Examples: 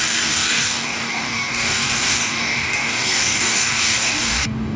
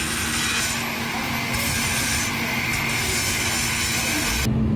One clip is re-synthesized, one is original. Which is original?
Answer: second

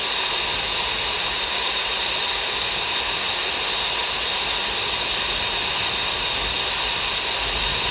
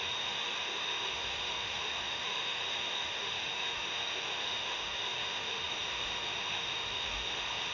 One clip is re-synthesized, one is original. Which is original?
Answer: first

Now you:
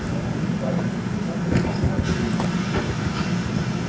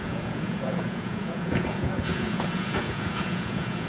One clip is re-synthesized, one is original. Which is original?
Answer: first